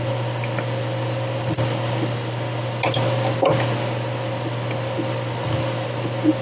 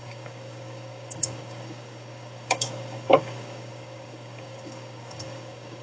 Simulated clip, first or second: second